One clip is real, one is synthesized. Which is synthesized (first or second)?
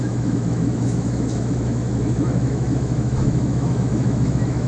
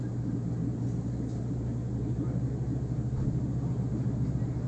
first